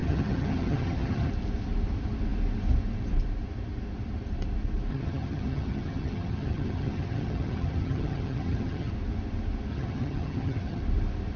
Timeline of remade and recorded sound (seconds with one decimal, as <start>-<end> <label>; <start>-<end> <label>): 0.0-1.3 remade; 1.3-4.9 recorded; 4.9-8.9 remade; 8.9-9.7 recorded; 9.7-10.8 remade; 10.8-11.4 recorded